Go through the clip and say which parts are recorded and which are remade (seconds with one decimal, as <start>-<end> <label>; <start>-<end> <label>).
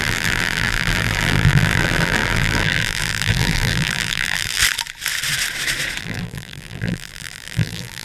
0.0-4.6 remade; 4.6-6.0 recorded; 6.0-8.0 remade